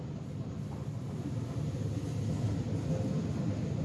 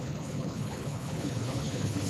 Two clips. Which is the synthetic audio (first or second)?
second